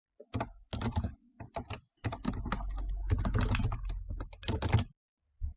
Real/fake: real